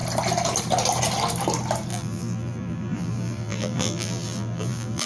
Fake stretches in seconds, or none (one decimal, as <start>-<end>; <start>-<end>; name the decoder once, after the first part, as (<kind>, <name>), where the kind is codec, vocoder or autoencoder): 1.9-5.1 (vocoder, BigVGAN v2)